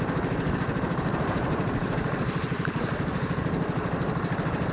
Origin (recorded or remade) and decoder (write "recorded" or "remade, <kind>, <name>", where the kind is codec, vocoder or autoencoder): remade, vocoder, BigVGAN v2